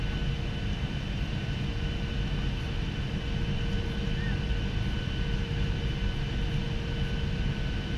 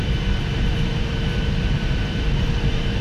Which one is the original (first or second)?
first